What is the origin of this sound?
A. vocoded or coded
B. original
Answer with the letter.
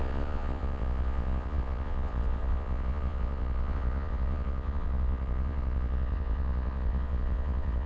A